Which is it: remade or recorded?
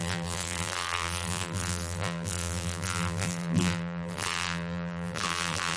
remade